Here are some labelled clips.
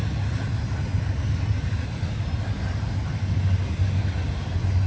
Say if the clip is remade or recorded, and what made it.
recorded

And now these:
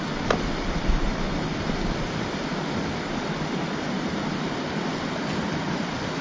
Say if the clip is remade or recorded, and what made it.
recorded